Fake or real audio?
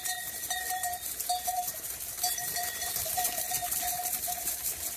fake